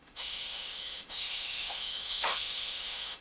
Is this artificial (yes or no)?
yes